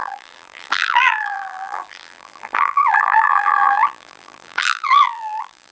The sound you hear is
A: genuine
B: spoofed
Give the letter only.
B